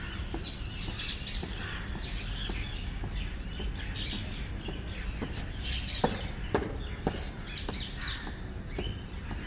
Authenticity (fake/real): real